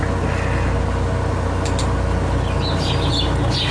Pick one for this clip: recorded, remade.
recorded